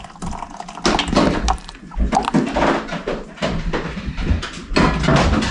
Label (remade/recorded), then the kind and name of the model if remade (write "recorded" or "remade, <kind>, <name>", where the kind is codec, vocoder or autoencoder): recorded